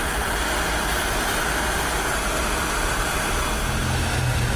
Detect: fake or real real